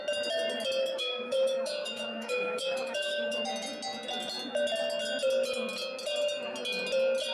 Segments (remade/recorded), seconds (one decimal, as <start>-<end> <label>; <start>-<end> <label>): 0.0-0.8 recorded; 0.8-3.5 remade; 3.5-7.3 recorded